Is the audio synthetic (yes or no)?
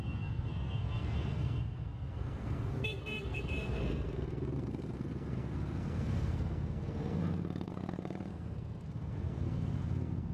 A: yes